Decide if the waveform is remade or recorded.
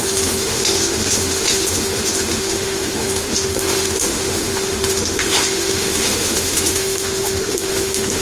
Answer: remade